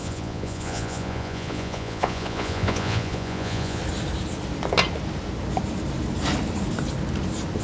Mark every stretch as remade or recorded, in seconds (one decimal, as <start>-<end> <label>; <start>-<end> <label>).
0.0-3.8 remade; 3.8-7.6 recorded